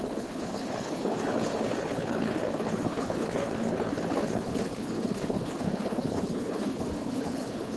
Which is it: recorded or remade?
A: remade